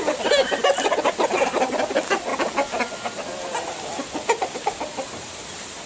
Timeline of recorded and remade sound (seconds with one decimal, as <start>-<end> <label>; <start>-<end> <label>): 0.0-5.9 recorded